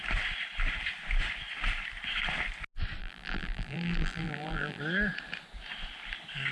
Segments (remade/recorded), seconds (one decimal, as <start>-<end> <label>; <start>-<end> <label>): 0.0-3.0 recorded; 3.0-4.8 remade; 4.8-6.5 recorded